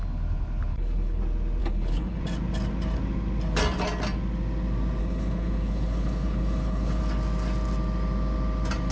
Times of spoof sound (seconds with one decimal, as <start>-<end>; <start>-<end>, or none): 0.7-1.2; 1.6-2.2; 5.0-7.0